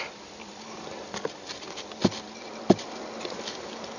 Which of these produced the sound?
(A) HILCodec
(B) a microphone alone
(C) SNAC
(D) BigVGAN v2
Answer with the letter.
B